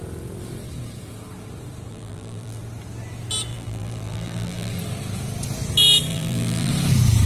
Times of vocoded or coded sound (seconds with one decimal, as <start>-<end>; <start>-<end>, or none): 1.9-2.6; 3.5-4.7; 6.1-6.7